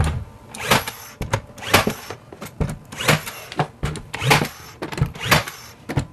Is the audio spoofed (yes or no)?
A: no